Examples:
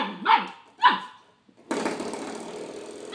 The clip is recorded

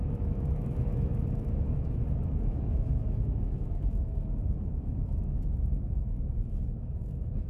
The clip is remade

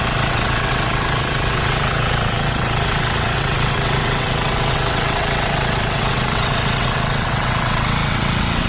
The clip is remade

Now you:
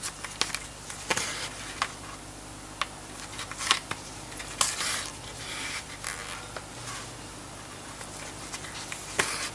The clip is recorded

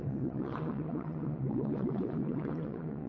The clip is remade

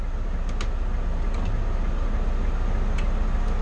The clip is recorded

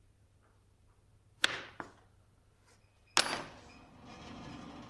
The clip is recorded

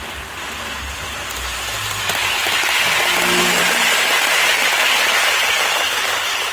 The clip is recorded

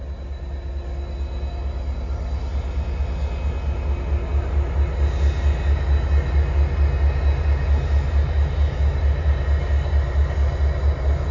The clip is recorded